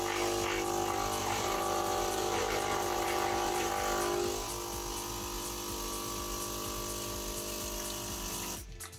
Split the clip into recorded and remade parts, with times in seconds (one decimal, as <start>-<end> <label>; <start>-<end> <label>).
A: 0.0-1.2 recorded; 1.2-3.7 remade; 3.7-9.0 recorded